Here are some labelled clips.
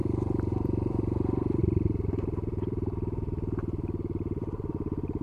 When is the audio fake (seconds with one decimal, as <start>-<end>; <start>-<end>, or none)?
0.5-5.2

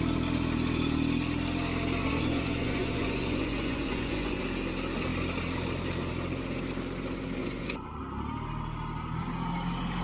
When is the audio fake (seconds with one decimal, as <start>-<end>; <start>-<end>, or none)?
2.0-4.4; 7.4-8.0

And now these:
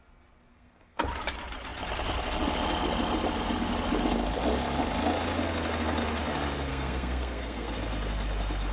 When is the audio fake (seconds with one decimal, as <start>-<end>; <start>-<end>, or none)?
0.5-1.0; 6.7-7.7